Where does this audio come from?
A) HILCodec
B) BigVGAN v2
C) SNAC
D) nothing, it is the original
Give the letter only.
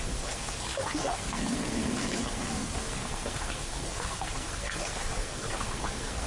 C